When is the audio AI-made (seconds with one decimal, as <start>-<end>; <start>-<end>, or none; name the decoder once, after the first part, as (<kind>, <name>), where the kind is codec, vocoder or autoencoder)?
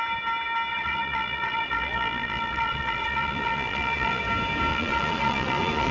0.7-4.2 (vocoder, Vocos); 4.7-5.9